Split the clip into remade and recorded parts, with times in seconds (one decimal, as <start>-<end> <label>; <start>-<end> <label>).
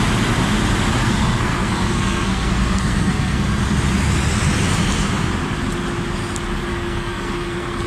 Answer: 0.0-1.0 recorded; 1.0-3.6 remade; 3.6-6.7 recorded; 6.7-7.9 remade